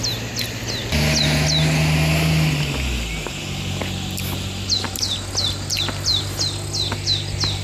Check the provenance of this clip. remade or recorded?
recorded